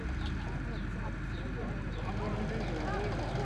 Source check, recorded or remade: recorded